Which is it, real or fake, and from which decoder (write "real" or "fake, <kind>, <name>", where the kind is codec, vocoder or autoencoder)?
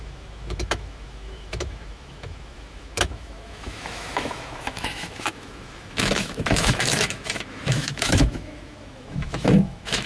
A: fake, autoencoder, DAC-VAE